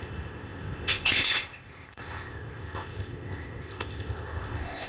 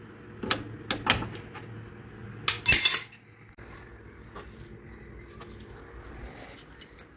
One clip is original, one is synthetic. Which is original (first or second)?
second